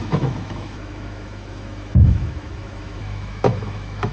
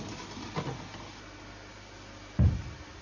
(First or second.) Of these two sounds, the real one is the second